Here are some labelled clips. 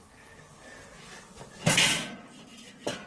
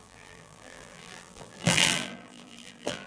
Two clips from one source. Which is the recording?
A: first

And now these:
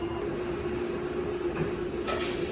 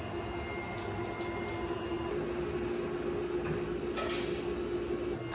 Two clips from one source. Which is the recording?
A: second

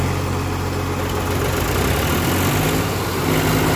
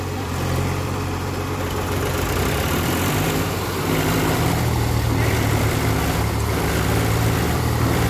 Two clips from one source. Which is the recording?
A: first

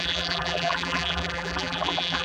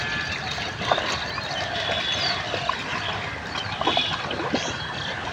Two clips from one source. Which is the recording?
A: second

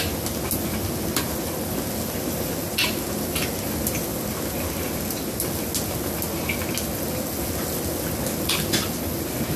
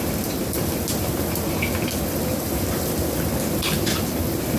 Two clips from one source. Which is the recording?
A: first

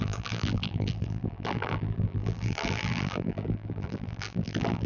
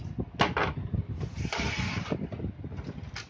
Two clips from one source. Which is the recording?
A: second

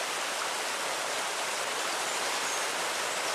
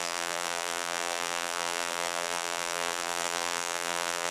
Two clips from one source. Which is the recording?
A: first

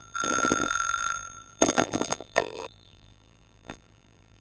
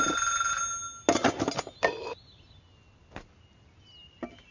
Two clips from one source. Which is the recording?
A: second